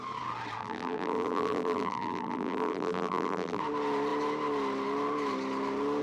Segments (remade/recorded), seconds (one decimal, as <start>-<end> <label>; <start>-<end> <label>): 0.0-0.6 recorded; 0.6-3.6 remade; 3.6-6.0 recorded